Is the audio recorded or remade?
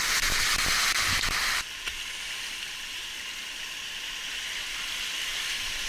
recorded